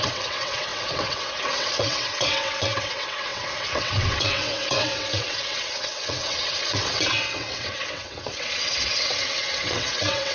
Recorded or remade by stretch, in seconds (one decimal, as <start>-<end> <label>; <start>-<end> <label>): 0.0-10.3 remade

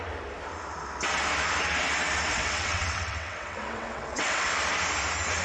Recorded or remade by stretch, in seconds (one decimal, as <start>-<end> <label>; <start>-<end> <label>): 0.0-2.3 recorded; 2.3-4.5 remade; 4.5-5.4 recorded

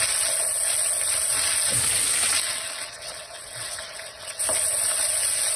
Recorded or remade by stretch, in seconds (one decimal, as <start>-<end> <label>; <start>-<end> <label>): 0.0-1.7 recorded; 1.7-4.4 remade; 4.4-5.6 recorded